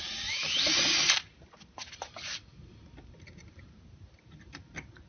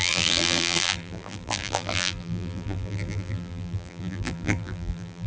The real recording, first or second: first